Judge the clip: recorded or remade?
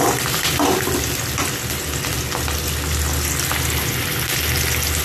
recorded